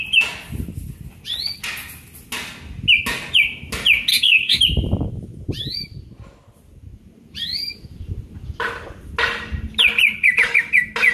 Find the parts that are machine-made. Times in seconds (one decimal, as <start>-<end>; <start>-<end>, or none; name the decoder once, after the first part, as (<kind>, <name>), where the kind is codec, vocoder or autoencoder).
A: 4.1-4.6 (codec, DAC)